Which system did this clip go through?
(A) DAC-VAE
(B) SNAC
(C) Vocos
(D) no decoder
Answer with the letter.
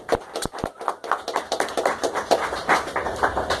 D